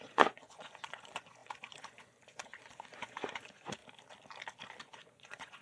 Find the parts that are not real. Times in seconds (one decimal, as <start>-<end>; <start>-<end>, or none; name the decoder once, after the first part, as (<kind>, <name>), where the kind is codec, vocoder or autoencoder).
0.0-3.8 (vocoder, Vocos); 4.8-5.6